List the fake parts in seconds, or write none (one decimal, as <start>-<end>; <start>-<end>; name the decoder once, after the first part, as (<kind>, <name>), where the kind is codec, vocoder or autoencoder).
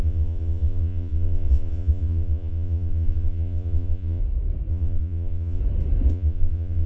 0.0-4.2 (vocoder, Vocos); 4.7-5.6; 6.1-6.9